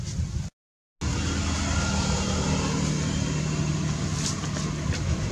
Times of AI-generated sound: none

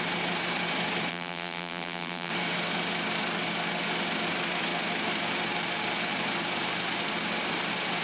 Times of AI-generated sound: 1.1-2.3 (vocoder, BigVGAN v2)

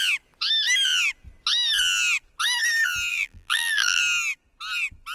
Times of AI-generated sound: 3.1-4.0 (vocoder, BigVGAN v2)

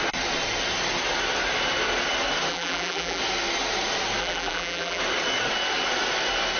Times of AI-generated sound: 2.5-3.2 (vocoder, BigVGAN v2); 4.2-5.0

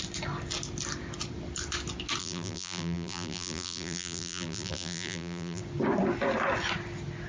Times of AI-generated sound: 2.2-5.6 (vocoder, BigVGAN v2)

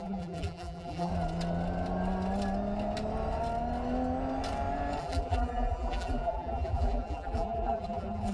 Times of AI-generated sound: 0.0-1.1 (vocoder, BigVGAN v2); 5.0-8.3